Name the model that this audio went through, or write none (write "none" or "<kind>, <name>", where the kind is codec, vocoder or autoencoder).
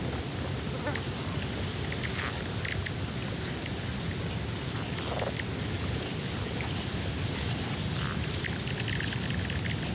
none